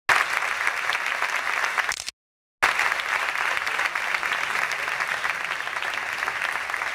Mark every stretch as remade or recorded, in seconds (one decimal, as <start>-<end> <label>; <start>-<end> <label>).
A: 0.0-6.9 recorded